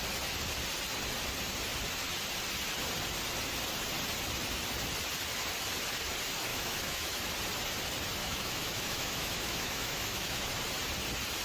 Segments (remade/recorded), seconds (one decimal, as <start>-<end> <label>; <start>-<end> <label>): 0.0-6.5 recorded; 6.5-7.3 remade; 7.3-8.2 recorded; 8.2-10.5 remade; 10.5-11.4 recorded